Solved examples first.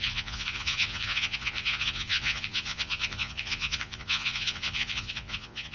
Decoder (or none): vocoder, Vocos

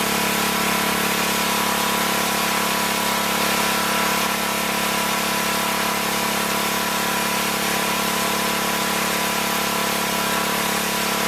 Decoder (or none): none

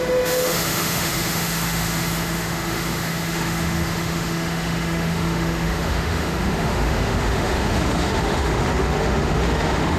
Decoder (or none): autoencoder, DAC-VAE